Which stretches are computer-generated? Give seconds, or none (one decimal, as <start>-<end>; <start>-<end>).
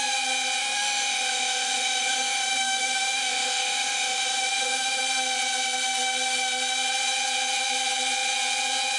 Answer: 0.6-5.0